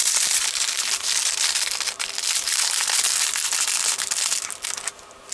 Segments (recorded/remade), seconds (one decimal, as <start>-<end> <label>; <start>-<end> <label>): 0.0-3.2 remade; 3.2-5.3 recorded